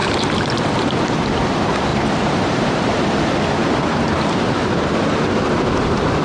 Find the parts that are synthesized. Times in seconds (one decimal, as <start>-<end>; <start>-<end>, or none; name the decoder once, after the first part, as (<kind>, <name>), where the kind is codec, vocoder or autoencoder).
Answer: 0.0-1.2 (vocoder, BigVGAN v2); 1.9-3.2; 3.6-4.8